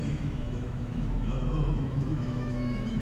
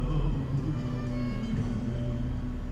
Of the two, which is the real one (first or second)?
second